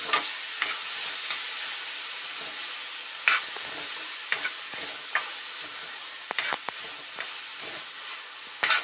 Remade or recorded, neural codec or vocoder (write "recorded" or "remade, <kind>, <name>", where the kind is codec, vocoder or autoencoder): recorded